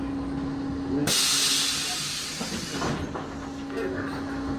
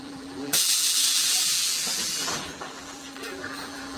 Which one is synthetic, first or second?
second